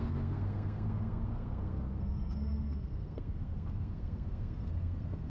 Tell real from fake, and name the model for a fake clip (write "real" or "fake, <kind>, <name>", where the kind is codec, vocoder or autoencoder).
fake, codec, SNAC